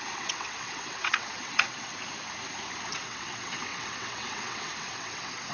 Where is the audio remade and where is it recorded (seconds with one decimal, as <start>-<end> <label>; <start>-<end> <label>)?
0.0-1.9 remade; 1.9-2.9 recorded; 2.9-5.5 remade